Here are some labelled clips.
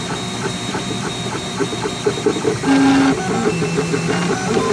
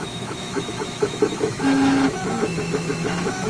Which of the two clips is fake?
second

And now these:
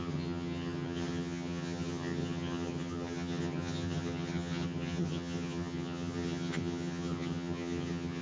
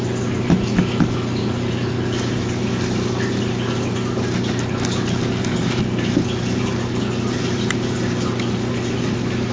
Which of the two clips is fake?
first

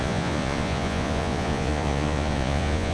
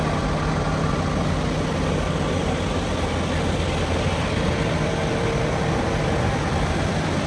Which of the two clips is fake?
first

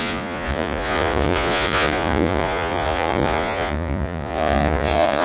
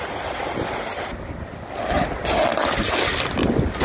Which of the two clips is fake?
first